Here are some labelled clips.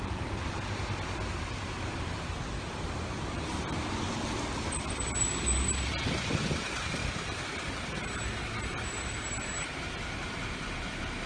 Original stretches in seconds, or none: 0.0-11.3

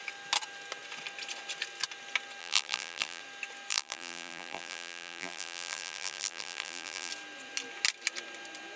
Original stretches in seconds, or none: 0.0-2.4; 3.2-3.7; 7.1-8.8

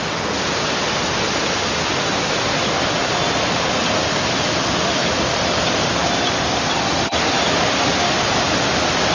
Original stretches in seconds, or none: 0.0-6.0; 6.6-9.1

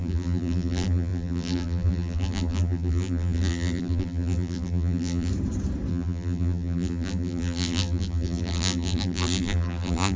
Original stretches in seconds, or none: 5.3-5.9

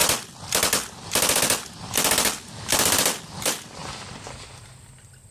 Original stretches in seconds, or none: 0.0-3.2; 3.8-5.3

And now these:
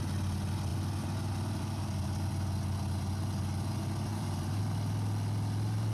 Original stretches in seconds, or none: 0.0-4.1; 4.6-5.9

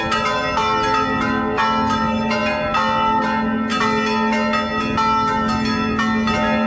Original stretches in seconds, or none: 0.0-6.7

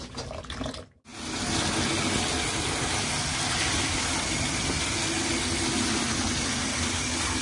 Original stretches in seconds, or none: 0.0-7.4